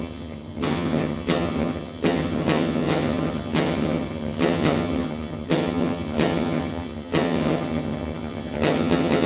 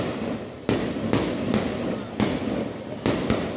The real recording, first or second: second